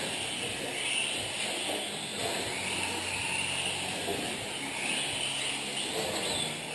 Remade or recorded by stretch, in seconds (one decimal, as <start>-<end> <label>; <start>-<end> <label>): 0.0-6.7 recorded